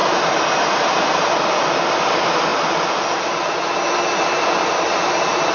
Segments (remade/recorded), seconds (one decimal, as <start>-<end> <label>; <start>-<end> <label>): 0.0-1.8 remade; 1.8-5.5 recorded